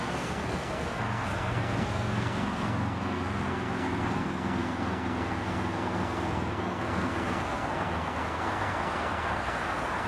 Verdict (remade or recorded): remade